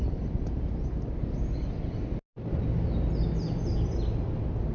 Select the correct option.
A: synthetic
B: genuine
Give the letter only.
B